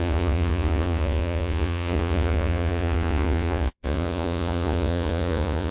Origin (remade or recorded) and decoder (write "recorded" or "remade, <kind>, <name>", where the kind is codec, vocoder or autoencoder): remade, vocoder, Vocos